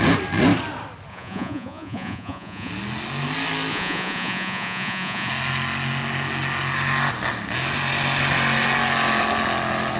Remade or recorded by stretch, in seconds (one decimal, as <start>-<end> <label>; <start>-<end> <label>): 0.0-1.1 recorded; 1.1-2.7 remade; 2.7-3.7 recorded; 3.7-5.3 remade; 5.3-10.0 recorded